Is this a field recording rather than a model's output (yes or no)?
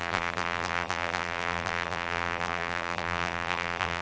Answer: no